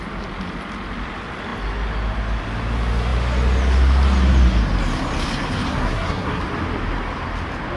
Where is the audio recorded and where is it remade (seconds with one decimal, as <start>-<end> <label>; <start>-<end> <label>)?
0.0-5.7 recorded; 5.7-6.4 remade; 6.4-7.8 recorded